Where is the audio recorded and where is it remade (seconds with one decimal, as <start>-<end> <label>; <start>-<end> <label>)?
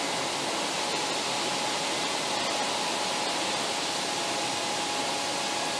0.0-5.8 recorded